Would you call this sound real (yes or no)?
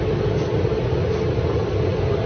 yes